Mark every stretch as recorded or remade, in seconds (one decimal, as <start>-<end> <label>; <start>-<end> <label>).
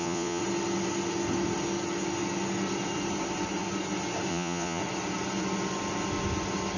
0.0-0.4 remade; 0.4-4.3 recorded; 4.3-4.8 remade; 4.8-6.8 recorded